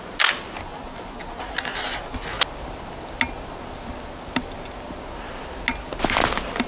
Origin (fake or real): real